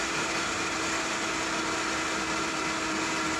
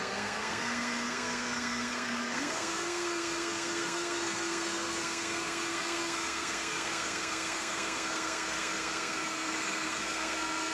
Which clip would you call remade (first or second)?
second